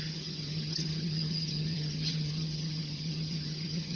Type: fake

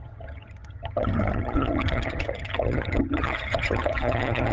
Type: fake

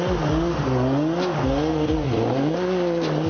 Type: real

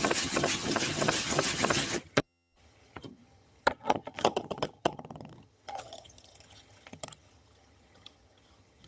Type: fake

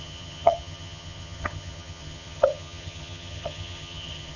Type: fake